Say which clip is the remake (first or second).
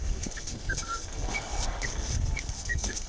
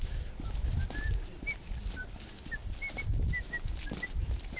first